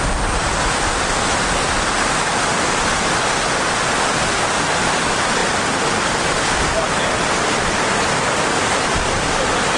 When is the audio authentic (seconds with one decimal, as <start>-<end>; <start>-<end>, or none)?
0.0-9.8